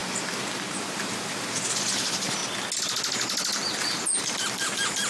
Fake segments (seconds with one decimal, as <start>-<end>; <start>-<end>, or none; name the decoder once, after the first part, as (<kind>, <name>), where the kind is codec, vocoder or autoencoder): 0.7-2.4 (vocoder, BigVGAN v2); 4.2-5.1